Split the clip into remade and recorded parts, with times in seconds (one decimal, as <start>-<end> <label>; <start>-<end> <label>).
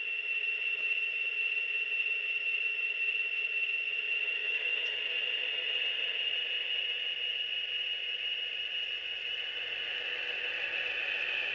0.0-4.4 recorded; 4.4-5.0 remade; 5.0-11.5 recorded